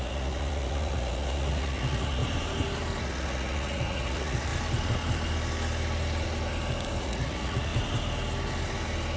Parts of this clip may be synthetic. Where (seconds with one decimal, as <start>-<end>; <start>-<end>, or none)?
0.0-2.2; 3.0-4.5; 7.0-7.7

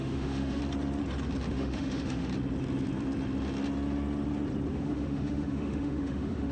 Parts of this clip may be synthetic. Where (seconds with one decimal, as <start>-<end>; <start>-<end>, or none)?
0.0-0.6; 1.5-2.3; 4.7-6.5

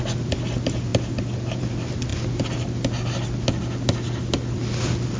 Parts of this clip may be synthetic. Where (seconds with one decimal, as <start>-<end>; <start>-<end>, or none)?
none